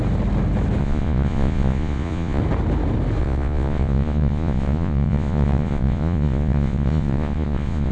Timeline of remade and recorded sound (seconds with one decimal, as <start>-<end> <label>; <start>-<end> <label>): 0.0-0.8 recorded; 0.8-2.4 remade; 2.4-3.2 recorded; 3.2-7.9 remade